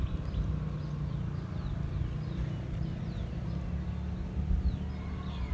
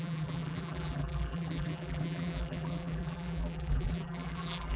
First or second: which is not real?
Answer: second